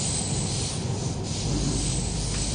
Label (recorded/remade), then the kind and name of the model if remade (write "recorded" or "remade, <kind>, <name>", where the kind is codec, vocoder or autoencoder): recorded